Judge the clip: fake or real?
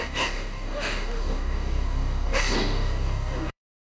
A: fake